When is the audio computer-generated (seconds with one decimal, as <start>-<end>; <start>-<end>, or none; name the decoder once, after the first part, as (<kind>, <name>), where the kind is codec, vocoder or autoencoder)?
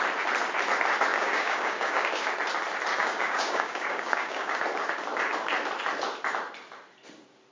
1.1-2.3 (codec, DAC); 2.9-4.6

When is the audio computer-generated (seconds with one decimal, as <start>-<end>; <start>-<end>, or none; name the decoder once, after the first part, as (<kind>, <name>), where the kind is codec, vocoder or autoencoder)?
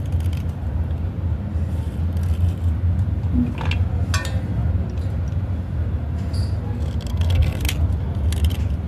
7.1-7.6 (codec, SNAC)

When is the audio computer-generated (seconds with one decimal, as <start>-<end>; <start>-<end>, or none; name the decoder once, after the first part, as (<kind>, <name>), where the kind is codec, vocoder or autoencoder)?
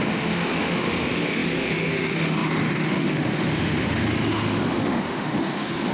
0.0-5.9 (autoencoder, DAC-VAE)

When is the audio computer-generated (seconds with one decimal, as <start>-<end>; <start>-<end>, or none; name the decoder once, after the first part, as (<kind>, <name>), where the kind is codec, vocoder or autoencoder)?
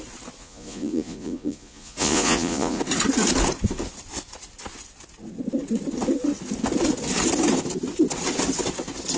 0.4-2.8 (vocoder, Vocos)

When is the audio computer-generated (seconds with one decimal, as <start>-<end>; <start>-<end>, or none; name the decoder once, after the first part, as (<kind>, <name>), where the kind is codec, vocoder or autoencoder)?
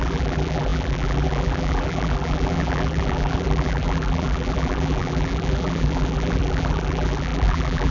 0.0-7.9 (vocoder, BigVGAN v2)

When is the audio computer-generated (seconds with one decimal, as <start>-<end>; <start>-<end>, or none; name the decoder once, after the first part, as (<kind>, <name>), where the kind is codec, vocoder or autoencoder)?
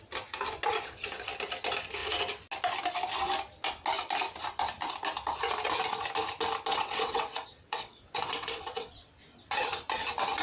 6.7-9.1 (vocoder, WaveNeXt)